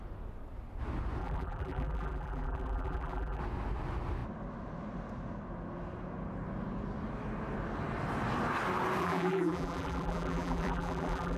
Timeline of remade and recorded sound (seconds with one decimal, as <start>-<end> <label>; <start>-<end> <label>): 0.0-1.2 recorded; 1.2-3.4 remade; 3.4-9.0 recorded; 9.0-11.4 remade